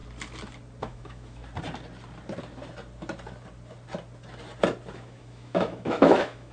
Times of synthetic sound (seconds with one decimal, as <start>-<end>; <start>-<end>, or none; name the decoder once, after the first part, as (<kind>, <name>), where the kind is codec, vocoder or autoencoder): 0.8-1.4 (autoencoder, DAC-VAE); 4.9-6.5